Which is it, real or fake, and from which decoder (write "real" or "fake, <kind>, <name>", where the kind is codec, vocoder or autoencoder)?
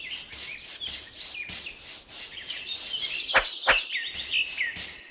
real